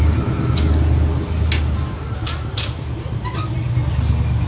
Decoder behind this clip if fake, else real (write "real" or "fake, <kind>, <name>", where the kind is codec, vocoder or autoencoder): real